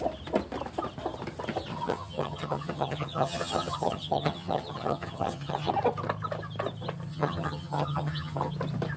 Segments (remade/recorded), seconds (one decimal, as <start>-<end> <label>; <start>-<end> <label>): 0.0-1.7 recorded; 1.7-5.7 remade; 5.7-7.1 recorded; 7.1-8.5 remade; 8.5-9.0 recorded